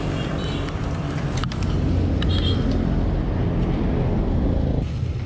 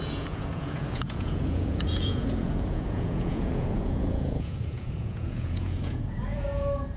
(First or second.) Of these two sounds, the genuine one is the first